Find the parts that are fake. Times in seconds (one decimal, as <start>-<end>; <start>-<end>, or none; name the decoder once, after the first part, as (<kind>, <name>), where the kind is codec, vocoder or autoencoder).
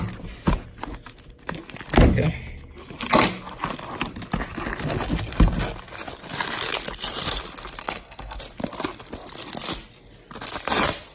7.8-8.4 (codec, SNAC)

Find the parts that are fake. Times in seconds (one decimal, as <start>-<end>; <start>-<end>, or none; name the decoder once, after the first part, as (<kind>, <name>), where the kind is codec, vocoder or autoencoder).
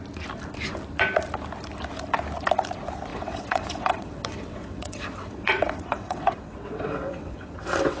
3.1-8.0 (vocoder, WaveNeXt)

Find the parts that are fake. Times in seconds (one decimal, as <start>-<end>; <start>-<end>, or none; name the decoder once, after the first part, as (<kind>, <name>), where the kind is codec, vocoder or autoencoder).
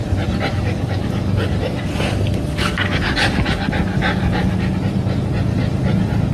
0.5-1.5 (codec, DAC); 2.5-4.7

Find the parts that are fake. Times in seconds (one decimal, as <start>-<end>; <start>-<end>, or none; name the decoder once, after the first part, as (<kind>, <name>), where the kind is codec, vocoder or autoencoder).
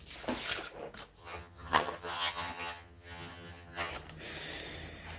1.2-3.9 (vocoder, HiFi-GAN)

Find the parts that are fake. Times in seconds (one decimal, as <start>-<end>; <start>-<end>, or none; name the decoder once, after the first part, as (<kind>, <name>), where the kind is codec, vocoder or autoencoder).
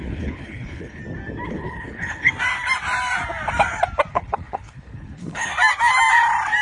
0.0-1.0 (codec, HILCodec); 1.5-2.3; 4.1-5.5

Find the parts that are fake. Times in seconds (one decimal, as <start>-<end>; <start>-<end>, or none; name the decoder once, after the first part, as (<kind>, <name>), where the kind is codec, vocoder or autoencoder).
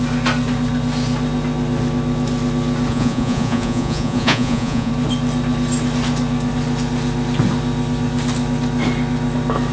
2.9-4.9 (vocoder, Vocos)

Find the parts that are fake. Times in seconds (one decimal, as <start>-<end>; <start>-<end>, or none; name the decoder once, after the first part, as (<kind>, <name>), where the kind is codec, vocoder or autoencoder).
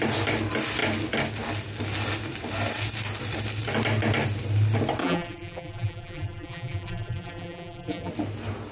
5.0-8.1 (vocoder, BigVGAN v2)